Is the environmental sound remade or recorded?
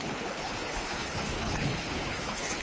remade